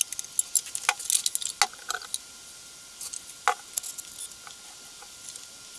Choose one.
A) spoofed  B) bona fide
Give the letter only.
B